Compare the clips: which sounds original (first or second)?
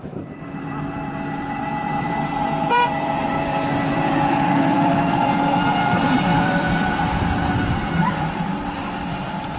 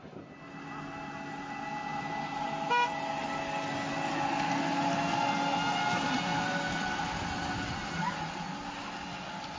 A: second